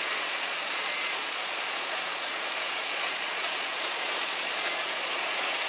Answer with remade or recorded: remade